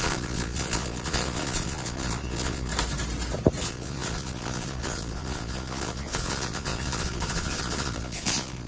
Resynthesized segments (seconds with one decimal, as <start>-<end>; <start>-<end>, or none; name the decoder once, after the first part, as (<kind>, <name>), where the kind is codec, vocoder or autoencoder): 0.0-2.7 (vocoder, Vocos); 3.6-8.7

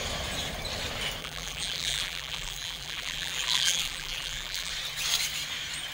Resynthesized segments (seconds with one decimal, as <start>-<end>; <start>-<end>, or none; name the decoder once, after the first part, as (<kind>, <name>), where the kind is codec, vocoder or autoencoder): 1.2-4.7 (vocoder, BigVGAN v2)

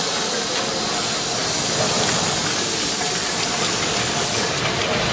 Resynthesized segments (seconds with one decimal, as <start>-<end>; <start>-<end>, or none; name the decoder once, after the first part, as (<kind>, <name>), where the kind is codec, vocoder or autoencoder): none

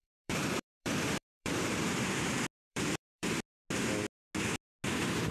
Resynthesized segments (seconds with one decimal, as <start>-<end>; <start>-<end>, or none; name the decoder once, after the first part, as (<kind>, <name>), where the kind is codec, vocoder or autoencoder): 0.0-2.2 (vocoder, BigVGAN v2); 2.7-3.3